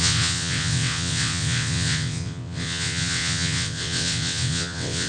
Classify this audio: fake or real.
fake